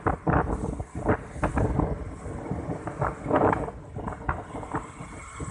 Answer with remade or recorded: recorded